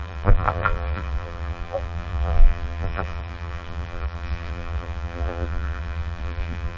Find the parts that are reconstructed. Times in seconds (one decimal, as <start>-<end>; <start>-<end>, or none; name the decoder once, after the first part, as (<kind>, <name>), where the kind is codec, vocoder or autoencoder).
0.0-6.8 (vocoder, BigVGAN v2)